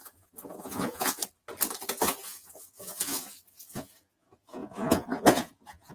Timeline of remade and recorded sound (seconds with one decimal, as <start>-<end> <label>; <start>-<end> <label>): 0.0-1.2 remade; 1.2-1.9 recorded; 1.9-5.9 remade